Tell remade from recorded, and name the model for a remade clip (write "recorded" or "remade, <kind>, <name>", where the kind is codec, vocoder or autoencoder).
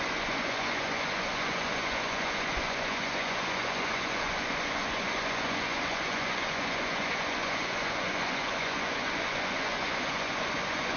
remade, vocoder, Vocos